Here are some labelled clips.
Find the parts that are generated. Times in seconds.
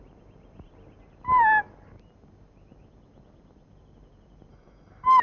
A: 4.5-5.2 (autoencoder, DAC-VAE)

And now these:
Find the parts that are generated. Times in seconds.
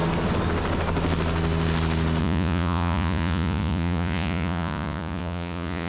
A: 2.2-5.9 (vocoder, Vocos)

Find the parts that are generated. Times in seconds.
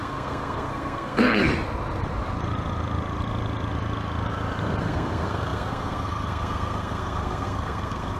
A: 0.0-1.5 (codec, SNAC); 4.8-8.2